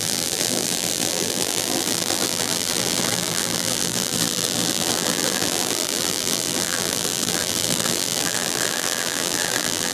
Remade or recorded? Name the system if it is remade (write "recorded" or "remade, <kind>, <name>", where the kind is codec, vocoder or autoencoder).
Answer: remade, vocoder, BigVGAN v2